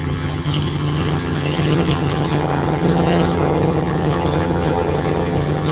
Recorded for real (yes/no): no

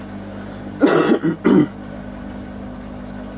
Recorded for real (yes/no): yes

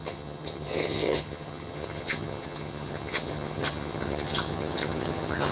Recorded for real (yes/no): no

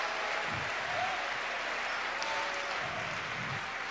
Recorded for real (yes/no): yes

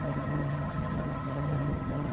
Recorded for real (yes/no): no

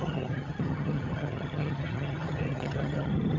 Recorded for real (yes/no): no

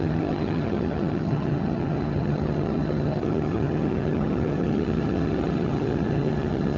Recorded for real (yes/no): no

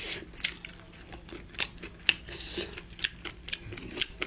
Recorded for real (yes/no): yes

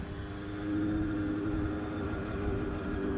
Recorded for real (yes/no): yes